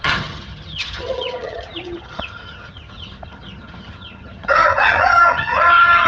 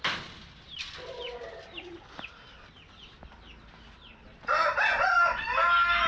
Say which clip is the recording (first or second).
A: second